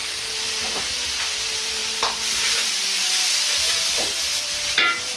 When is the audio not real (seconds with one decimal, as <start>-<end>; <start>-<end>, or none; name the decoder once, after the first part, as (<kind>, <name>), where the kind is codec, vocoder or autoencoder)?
none

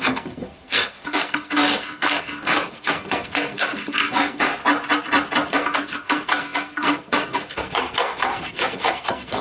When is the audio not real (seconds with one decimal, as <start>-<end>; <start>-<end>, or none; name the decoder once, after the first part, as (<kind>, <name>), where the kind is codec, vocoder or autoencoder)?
0.0-4.6 (codec, SNAC); 5.5-9.4

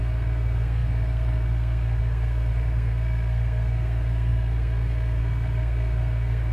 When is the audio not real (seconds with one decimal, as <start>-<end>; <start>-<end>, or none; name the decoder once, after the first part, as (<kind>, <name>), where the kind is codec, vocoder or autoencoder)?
0.0-6.5 (codec, SNAC)